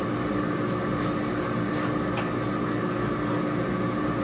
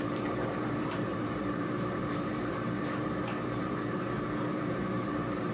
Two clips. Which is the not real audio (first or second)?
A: second